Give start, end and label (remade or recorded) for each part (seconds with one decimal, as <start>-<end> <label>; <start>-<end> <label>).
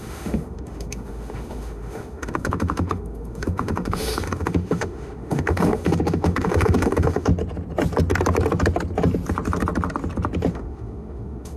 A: 0.0-7.3 remade; 7.3-10.5 recorded; 10.5-11.6 remade